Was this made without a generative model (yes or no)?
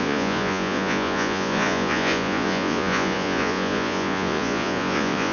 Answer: no